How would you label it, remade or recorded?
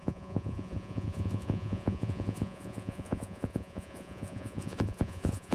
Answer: remade